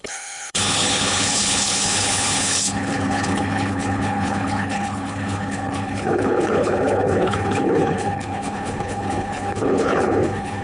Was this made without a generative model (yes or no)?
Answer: no